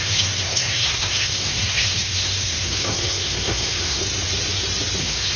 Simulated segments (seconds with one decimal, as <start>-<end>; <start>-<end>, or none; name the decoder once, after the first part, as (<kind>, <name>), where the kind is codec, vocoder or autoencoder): 0.0-4.0 (codec, SNAC); 5.0-5.4